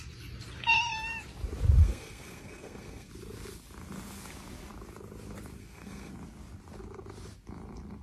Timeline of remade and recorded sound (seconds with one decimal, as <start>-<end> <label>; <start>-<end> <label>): 0.0-1.8 recorded; 1.8-3.1 remade; 3.1-5.6 recorded; 5.6-6.1 remade; 6.1-8.0 recorded